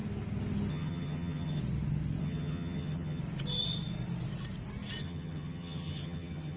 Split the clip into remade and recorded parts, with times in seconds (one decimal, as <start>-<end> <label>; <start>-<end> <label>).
0.0-0.7 recorded; 0.7-1.6 remade; 1.6-2.2 recorded; 2.2-3.2 remade; 3.2-5.0 recorded; 5.0-6.6 remade